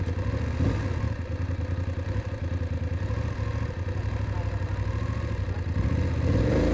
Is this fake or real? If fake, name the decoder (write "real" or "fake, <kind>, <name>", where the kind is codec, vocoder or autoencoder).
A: real